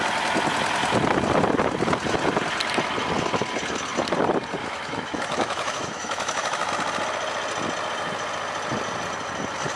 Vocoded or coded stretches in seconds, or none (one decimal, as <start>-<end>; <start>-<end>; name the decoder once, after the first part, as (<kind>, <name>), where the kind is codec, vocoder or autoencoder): 4.6-6.7 (autoencoder, DAC-VAE)